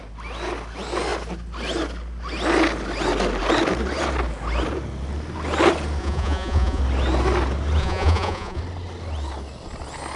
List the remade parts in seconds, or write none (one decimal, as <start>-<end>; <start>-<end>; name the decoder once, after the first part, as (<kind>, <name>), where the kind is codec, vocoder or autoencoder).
6.0-6.8 (vocoder, Vocos); 7.8-8.6